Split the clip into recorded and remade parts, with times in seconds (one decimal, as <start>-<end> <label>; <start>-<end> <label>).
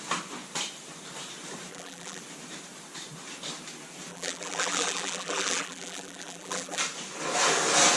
0.0-1.7 recorded; 1.7-2.2 remade; 2.2-4.1 recorded; 4.1-6.8 remade; 6.8-8.0 recorded